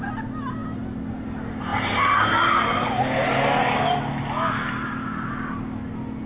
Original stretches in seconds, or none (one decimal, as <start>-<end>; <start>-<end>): 0.0-6.3